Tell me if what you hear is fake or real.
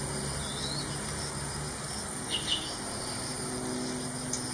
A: real